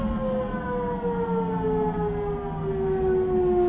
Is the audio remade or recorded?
recorded